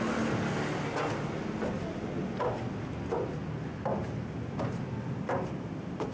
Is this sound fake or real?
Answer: real